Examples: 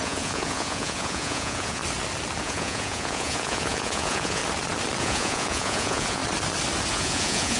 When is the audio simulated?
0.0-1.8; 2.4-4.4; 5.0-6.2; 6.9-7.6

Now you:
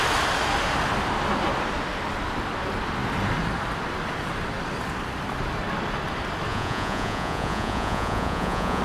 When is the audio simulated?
6.5-8.8

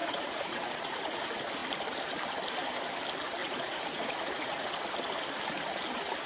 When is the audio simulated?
0.0-1.2; 3.4-4.7

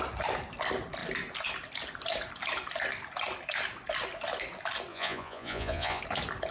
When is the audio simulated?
4.9-6.0

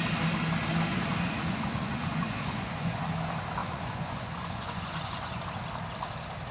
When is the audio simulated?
0.9-3.1; 3.6-5.4

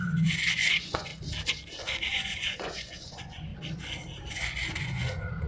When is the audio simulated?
0.0-1.1; 2.1-3.5; 4.3-5.5

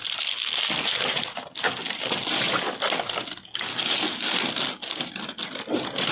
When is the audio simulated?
none